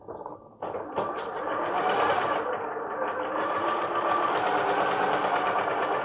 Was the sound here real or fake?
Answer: fake